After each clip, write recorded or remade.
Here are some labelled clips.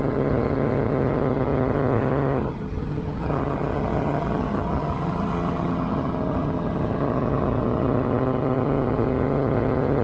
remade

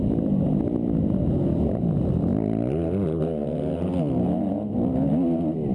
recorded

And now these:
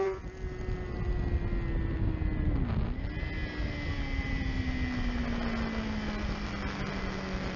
recorded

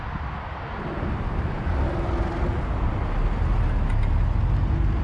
recorded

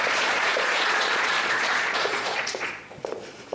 remade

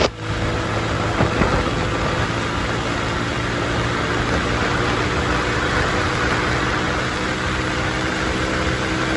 recorded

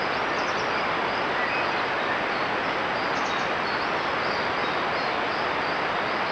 recorded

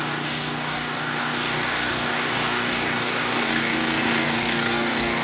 remade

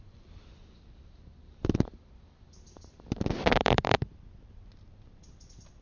remade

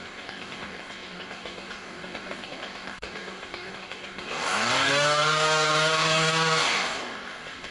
remade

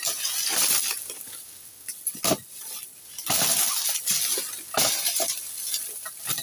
recorded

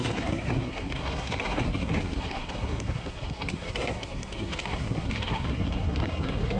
remade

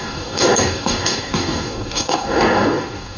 remade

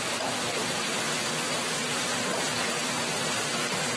remade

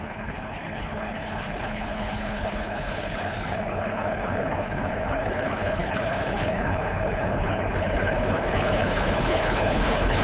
remade